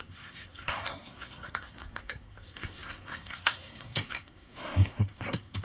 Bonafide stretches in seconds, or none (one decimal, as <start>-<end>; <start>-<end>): none